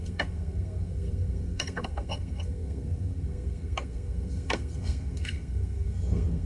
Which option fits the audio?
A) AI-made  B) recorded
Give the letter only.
A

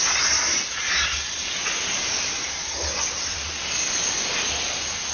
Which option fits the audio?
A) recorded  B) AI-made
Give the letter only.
A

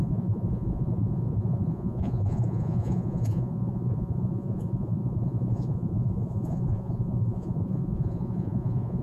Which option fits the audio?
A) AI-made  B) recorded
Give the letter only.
A